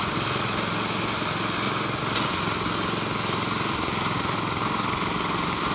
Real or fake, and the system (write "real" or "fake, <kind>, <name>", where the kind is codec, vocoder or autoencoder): real